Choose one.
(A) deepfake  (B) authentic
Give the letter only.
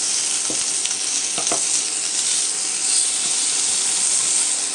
B